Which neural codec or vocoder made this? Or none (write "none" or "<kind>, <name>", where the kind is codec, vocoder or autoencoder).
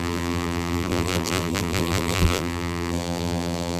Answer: vocoder, BigVGAN v2